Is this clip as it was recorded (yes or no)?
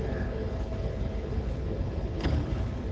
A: no